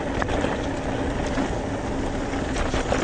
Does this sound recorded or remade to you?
recorded